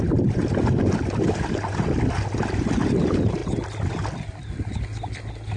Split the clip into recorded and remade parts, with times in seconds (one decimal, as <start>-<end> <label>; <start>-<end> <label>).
0.0-5.6 recorded